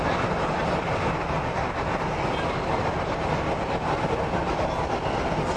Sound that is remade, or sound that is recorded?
recorded